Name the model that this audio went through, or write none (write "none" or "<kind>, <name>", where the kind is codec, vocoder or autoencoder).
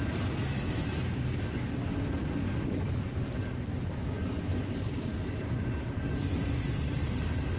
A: none